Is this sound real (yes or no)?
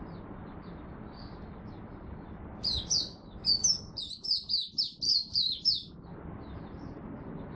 yes